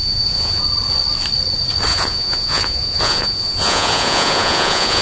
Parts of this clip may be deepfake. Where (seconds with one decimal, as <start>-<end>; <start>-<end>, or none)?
0.0-0.6; 1.9-5.0